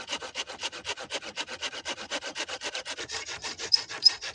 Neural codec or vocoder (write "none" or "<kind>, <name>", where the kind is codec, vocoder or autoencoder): none